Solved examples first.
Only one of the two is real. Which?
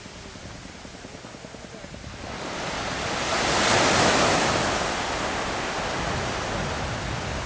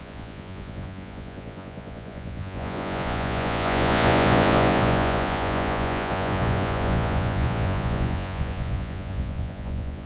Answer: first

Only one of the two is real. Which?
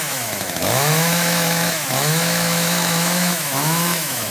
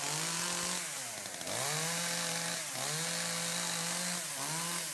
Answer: second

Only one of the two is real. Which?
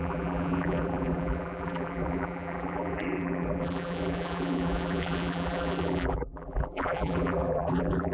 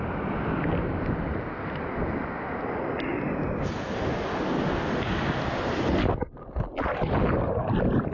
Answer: second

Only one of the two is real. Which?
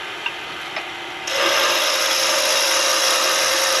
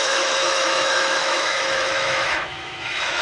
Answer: first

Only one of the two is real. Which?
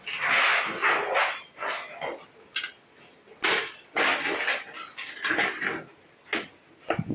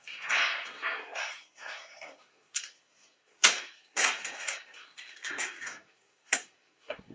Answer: first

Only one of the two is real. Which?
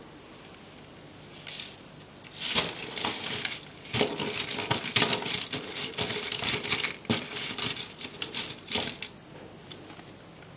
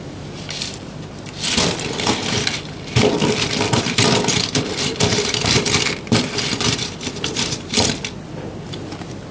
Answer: first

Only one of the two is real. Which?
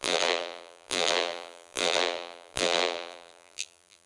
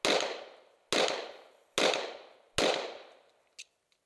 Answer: second